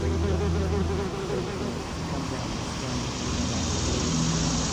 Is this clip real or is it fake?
real